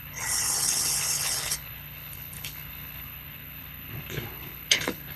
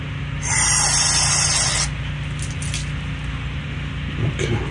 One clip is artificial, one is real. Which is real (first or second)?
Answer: second